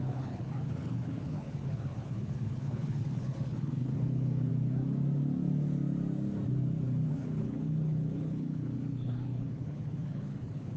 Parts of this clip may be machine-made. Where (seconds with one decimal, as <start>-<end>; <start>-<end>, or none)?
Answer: 0.0-4.5; 7.1-10.8